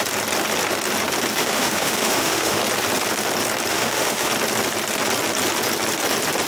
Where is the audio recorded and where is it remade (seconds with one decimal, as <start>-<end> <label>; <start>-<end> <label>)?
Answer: 0.0-1.4 recorded; 1.4-2.6 remade; 2.6-3.7 recorded; 3.7-4.3 remade; 4.3-6.5 recorded